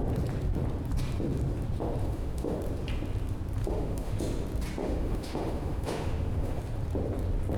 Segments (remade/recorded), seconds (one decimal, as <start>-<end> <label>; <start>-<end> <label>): 0.0-2.0 recorded; 2.0-2.6 remade; 2.6-3.6 recorded; 3.6-4.2 remade; 4.2-4.8 recorded; 4.8-6.6 remade; 6.6-7.6 recorded